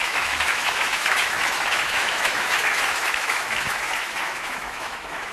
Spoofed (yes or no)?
yes